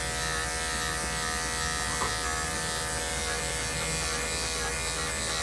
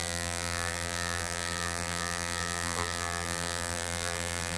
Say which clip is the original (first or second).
first